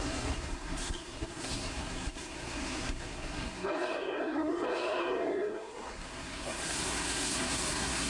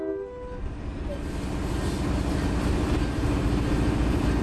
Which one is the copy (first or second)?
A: first